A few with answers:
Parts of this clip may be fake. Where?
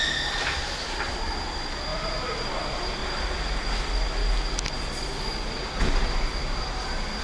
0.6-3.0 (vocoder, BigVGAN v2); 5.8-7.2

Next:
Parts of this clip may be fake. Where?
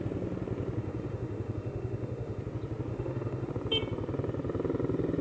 0.8-2.4 (autoencoder, DAC-VAE); 2.9-3.5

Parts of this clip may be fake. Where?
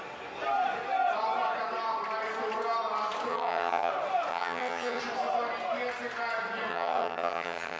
3.3-3.9 (vocoder, HiFi-GAN); 4.3-5.0; 6.7-7.8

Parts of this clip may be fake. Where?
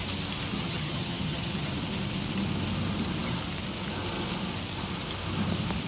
0.5-1.7 (vocoder, HiFi-GAN)